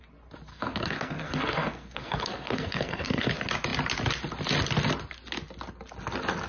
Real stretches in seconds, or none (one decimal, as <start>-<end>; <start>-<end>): 0.0-0.5; 3.3-6.5